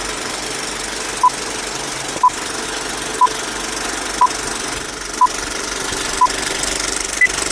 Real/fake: real